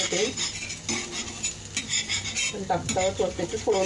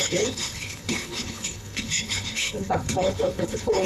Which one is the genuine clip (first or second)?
first